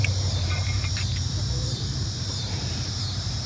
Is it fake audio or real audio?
fake